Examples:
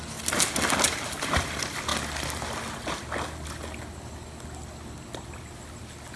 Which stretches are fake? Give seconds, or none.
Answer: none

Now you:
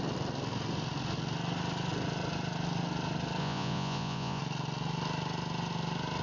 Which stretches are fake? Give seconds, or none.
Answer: 3.4-4.4 (vocoder, Vocos)

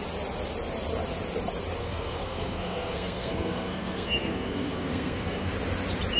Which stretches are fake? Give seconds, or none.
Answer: 1.8-5.5 (codec, SNAC)

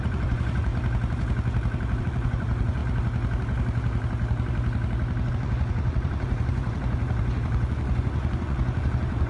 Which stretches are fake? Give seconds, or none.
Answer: 0.0-0.7 (vocoder, Vocos); 2.0-2.8; 5.3-9.3

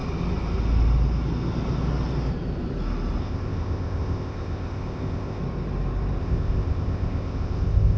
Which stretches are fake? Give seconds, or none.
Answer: 3.2-5.4 (codec, ZipCodec); 6.2-8.0